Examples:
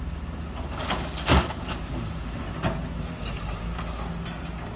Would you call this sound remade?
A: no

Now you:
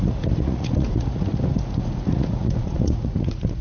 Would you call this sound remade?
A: yes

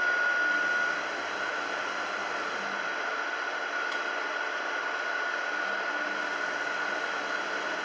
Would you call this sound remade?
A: no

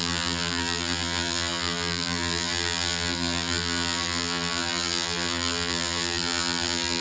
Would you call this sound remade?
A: yes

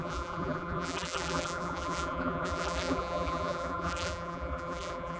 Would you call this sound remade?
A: yes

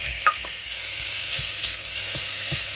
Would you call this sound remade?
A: yes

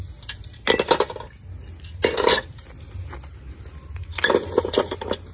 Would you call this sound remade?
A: no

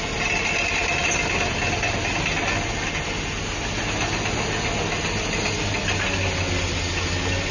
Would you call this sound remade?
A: no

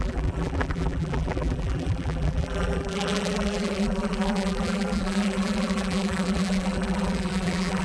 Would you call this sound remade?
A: yes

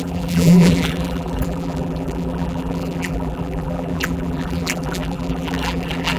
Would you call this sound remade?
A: yes